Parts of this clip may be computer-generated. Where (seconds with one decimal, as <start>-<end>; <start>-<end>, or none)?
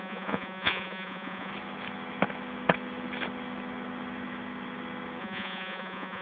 0.0-1.5; 5.2-6.2